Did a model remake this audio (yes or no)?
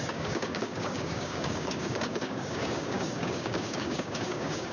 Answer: yes